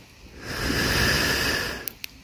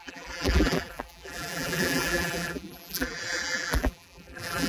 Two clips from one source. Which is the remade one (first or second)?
second